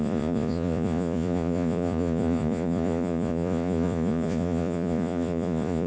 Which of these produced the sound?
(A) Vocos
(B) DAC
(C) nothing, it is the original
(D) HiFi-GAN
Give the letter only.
A